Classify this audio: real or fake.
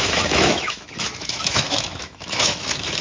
fake